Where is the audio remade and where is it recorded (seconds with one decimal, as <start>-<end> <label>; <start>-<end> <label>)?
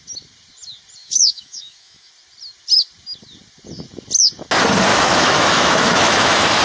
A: 0.0-1.0 recorded; 1.0-2.1 remade; 2.1-4.9 recorded; 4.9-6.6 remade